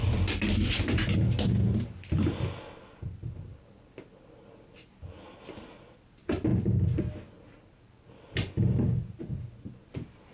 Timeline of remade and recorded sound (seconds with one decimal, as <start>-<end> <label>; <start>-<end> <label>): 0.0-10.3 recorded